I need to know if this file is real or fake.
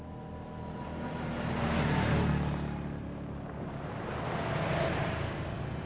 real